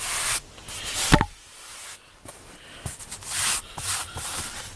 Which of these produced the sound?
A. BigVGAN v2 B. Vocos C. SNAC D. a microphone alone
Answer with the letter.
D